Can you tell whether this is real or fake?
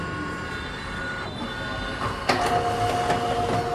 real